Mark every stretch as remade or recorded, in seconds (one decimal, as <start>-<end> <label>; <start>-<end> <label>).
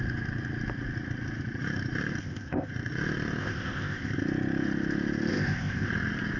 0.0-2.2 recorded; 2.2-2.7 remade; 2.7-3.4 recorded; 3.4-4.1 remade; 4.1-5.3 recorded; 5.3-5.9 remade; 5.9-6.4 recorded